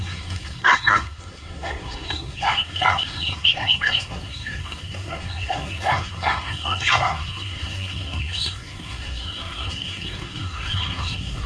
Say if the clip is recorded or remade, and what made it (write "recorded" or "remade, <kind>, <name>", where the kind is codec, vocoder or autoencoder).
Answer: remade, codec, SNAC